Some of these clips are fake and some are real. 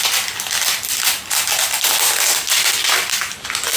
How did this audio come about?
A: real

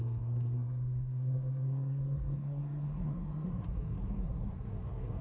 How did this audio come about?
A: fake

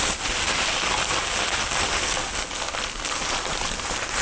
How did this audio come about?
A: real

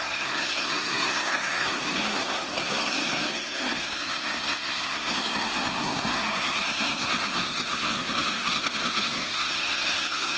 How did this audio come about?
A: fake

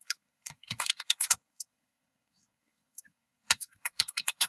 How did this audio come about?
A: fake